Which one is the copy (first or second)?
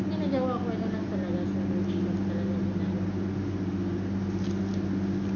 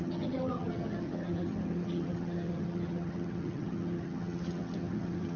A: second